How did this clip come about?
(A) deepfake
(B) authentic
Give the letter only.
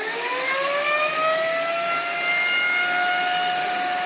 A